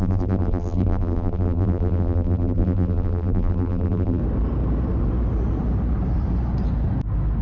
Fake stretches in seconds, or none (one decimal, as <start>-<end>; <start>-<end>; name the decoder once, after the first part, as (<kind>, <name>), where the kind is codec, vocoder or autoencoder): 0.0-4.2 (vocoder, BigVGAN v2)